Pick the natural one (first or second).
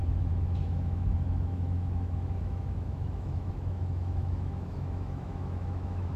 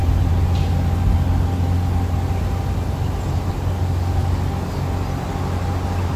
second